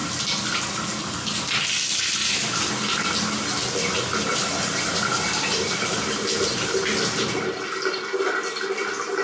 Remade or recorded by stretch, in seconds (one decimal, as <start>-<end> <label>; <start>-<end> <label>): 0.0-2.2 recorded; 2.2-2.7 remade; 2.7-4.3 recorded; 4.3-8.3 remade; 8.3-9.2 recorded